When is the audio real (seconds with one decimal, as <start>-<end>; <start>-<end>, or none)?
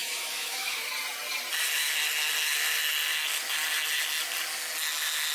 0.9-5.3